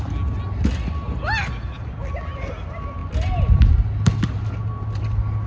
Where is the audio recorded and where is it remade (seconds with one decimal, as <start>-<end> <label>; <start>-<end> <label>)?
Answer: 0.0-5.5 recorded